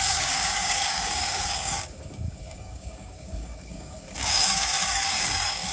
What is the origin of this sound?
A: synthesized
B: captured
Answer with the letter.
A